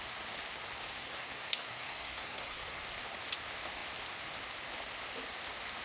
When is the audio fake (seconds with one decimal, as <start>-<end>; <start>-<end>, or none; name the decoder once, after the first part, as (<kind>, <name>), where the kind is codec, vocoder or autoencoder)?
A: 0.9-2.8 (codec, SNAC)